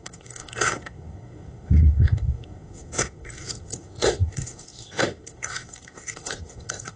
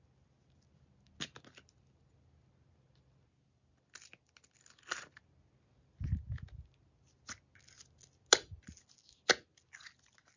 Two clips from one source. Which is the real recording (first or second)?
second